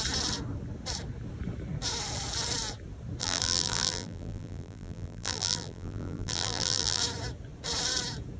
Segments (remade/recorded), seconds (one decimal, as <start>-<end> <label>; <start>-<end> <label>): 0.0-3.2 recorded; 3.2-7.0 remade; 7.0-8.4 recorded